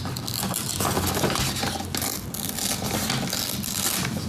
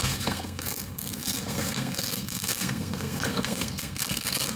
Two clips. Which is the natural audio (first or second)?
first